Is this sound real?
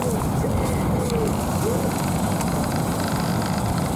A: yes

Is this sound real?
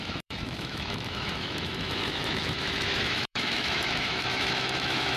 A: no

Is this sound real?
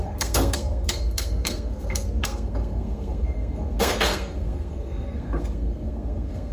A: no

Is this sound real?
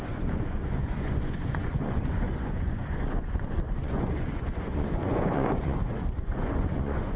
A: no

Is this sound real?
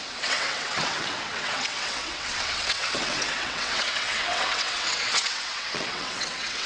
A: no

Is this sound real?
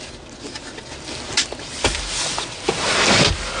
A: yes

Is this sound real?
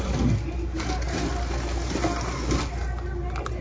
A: yes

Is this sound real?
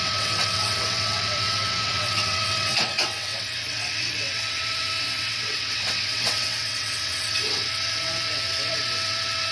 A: no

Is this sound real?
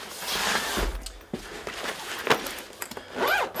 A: yes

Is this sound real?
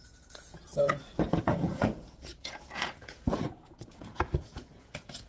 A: no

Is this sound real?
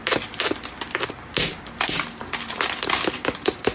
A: yes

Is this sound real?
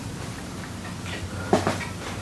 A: yes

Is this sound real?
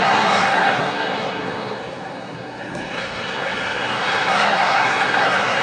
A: no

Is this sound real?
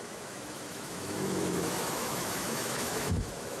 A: no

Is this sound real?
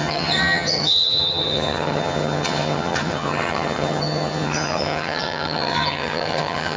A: no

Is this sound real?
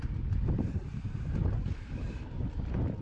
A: yes